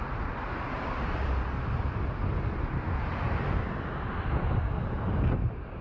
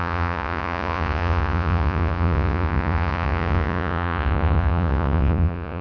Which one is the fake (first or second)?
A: second